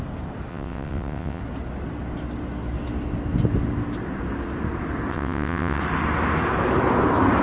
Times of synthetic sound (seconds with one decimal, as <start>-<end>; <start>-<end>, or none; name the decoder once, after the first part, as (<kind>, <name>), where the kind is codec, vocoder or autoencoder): 0.5-1.4 (vocoder, WaveNeXt); 5.1-5.8